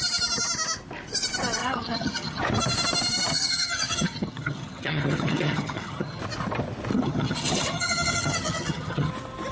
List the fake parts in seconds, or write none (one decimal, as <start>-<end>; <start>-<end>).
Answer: 1.6-2.4; 3.3-6.2; 6.9-9.1